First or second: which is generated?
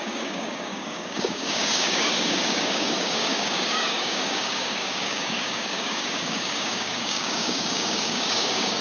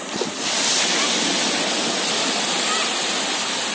first